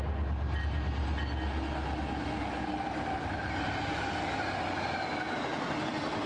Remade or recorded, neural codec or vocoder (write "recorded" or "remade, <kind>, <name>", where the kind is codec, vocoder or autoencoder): recorded